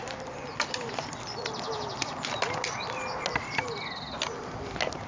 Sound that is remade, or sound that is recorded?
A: recorded